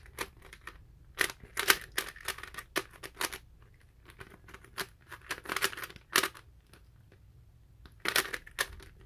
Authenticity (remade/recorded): recorded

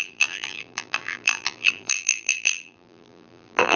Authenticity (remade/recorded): remade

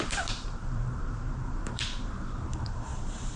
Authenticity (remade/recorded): remade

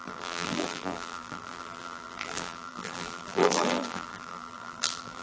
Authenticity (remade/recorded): remade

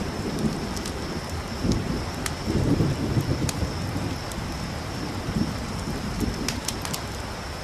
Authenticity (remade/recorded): remade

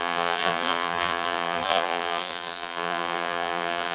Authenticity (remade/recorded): remade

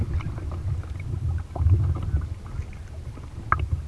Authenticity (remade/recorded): recorded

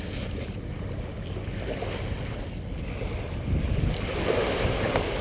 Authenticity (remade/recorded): recorded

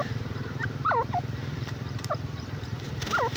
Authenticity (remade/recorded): remade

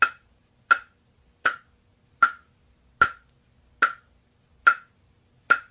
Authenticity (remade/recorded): recorded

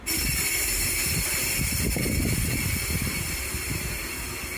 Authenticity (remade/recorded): recorded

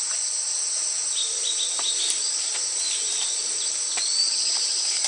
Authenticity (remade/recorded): remade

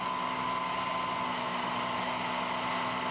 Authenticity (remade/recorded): recorded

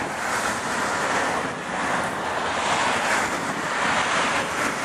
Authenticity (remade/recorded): recorded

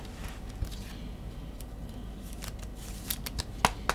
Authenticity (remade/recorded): recorded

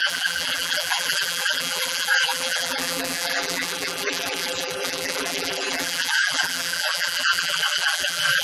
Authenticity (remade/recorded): remade